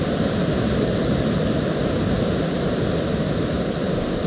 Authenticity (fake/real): real